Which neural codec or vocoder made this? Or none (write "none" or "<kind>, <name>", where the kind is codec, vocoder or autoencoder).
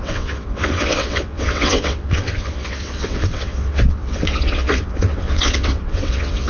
vocoder, WaveNeXt